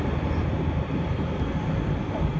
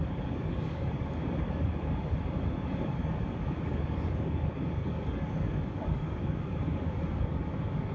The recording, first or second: first